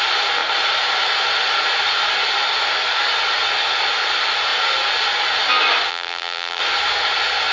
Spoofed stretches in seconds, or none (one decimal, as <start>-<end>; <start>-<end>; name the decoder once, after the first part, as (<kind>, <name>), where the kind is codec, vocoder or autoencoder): 5.9-6.6 (vocoder, BigVGAN v2)